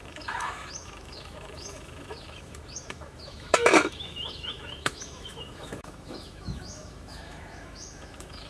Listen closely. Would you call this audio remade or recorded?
remade